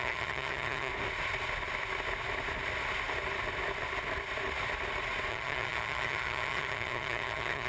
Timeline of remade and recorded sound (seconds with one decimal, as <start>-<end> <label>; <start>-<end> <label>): 0.0-0.9 remade; 0.9-5.3 recorded; 5.3-7.7 remade